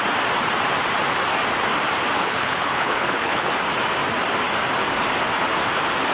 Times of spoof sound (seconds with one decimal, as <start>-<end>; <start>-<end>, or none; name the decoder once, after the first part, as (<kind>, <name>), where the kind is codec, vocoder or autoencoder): 2.2-3.5 (codec, HILCodec)